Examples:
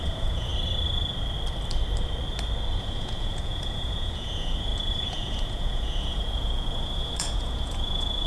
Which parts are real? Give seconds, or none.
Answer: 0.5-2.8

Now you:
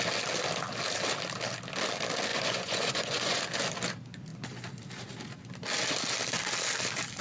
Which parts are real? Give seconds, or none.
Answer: 0.0-2.3; 3.4-7.2

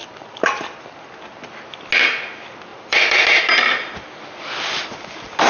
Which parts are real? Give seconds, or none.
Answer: 1.0-2.7; 3.4-5.5

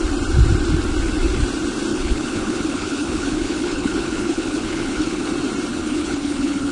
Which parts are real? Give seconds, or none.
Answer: 0.0-1.9; 5.3-5.7

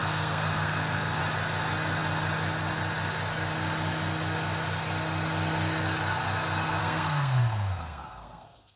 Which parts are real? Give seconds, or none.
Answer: 1.2-6.8

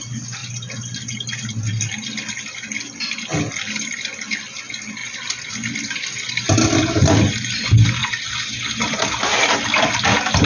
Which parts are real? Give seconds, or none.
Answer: 0.0-10.5

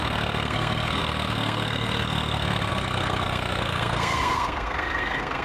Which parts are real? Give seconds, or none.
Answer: none

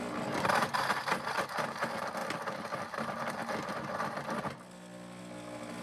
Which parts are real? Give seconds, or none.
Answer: 0.0-5.8